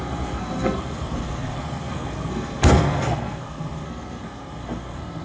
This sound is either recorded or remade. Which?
remade